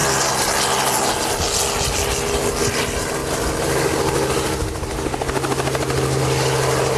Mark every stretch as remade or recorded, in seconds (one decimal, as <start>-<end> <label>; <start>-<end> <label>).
0.0-7.0 recorded